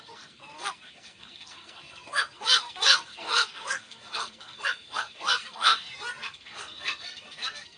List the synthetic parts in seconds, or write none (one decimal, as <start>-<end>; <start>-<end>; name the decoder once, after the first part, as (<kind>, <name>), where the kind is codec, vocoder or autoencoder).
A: 0.0-7.8 (codec, SNAC)